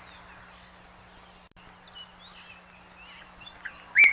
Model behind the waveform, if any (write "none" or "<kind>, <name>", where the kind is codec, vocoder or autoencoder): none